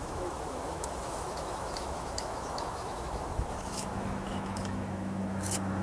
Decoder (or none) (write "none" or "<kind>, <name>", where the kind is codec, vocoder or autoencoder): autoencoder, DAC-VAE